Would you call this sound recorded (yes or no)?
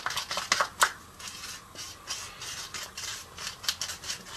yes